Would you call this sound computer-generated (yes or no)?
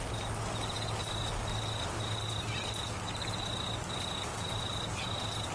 no